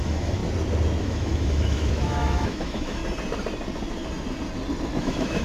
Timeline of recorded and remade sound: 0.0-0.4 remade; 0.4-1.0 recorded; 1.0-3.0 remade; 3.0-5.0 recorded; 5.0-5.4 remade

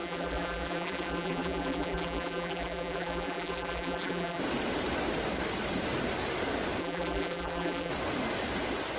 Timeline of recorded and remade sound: 0.0-4.4 remade; 4.4-6.8 recorded; 6.8-7.9 remade; 7.9-9.0 recorded

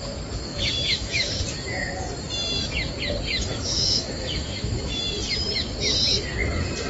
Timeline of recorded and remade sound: 0.0-0.5 recorded; 0.5-1.3 remade; 1.3-3.5 recorded; 3.5-5.0 remade; 5.0-6.9 recorded

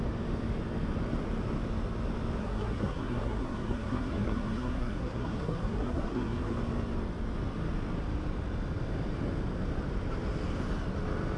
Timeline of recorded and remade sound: 0.0-2.4 recorded; 2.4-6.5 remade; 6.5-11.4 recorded